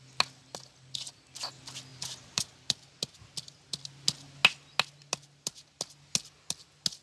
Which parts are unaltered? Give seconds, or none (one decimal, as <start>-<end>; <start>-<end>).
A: 0.0-1.9; 2.9-7.0